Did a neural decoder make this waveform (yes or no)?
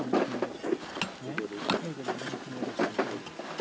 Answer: no